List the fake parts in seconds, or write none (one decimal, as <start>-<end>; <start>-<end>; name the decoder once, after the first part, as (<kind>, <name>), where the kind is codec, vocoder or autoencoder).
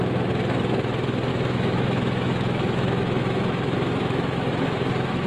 1.3-4.5 (autoencoder, DAC-VAE)